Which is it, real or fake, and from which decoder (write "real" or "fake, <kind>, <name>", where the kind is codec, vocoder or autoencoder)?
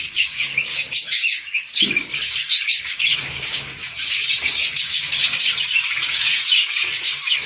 fake, codec, DAC